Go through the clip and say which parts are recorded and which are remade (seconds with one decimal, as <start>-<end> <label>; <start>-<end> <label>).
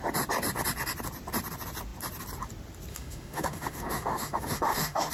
0.0-2.9 recorded; 2.9-5.1 remade